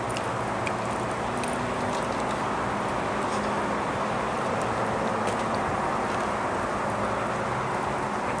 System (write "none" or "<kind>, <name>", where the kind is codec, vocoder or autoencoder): none